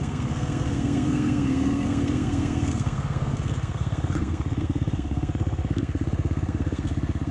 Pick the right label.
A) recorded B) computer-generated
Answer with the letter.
B